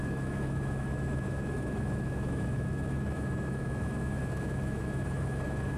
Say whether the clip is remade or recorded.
remade